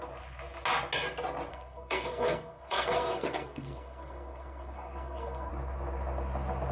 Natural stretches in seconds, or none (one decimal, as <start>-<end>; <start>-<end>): 0.0-1.5; 5.5-6.7